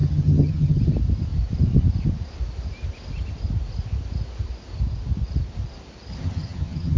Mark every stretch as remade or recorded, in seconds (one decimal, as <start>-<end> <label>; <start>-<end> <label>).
0.0-0.8 remade; 0.8-6.1 recorded; 6.1-7.0 remade